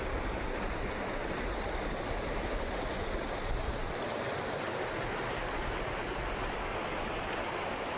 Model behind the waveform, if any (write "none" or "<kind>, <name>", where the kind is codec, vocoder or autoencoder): none